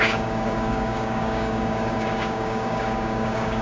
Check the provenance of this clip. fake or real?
fake